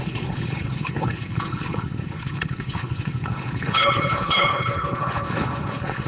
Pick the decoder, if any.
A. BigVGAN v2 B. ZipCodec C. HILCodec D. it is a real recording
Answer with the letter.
C